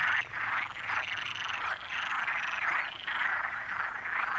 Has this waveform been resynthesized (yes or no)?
no